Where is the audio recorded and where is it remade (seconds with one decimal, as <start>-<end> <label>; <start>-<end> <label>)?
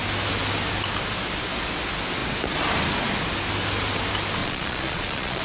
0.0-4.4 recorded; 4.4-5.4 remade